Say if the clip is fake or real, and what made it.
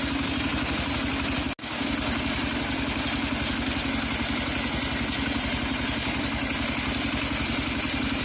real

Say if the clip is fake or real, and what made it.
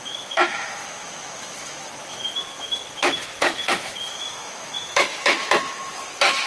fake, autoencoder, DAC-VAE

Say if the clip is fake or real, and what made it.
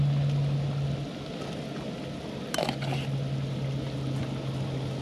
real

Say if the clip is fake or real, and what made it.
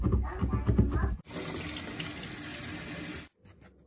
real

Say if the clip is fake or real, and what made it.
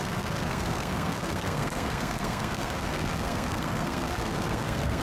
fake, codec, SNAC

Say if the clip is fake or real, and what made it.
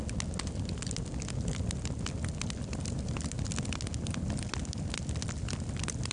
real